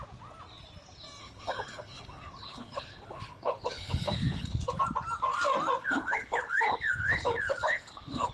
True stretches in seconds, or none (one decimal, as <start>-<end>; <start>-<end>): 0.0-1.2; 4.6-5.8